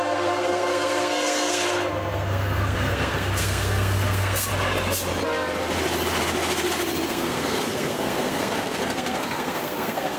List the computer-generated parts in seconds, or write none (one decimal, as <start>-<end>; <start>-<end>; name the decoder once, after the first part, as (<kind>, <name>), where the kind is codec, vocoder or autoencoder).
0.0-4.5 (codec, SNAC); 7.1-10.2